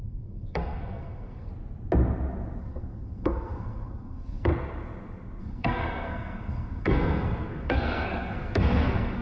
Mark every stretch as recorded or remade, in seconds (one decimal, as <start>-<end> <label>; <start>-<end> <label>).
0.0-1.5 remade; 1.5-2.6 recorded; 2.6-4.5 remade; 4.5-5.4 recorded; 5.4-9.2 remade